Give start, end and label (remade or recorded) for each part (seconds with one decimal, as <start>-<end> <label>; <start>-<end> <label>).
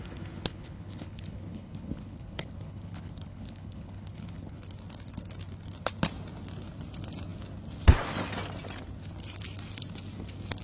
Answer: 0.0-0.5 recorded; 0.5-4.6 remade; 4.6-10.6 recorded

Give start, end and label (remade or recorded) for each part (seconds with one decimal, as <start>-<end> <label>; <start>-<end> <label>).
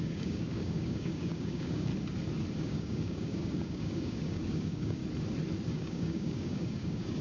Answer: 0.0-1.9 remade; 1.9-2.6 recorded; 2.6-5.0 remade; 5.0-5.7 recorded; 5.7-7.2 remade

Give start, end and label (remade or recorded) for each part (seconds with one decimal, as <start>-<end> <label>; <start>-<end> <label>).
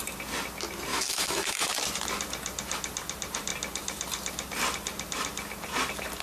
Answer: 0.0-0.9 recorded; 0.9-1.7 remade; 1.7-6.2 recorded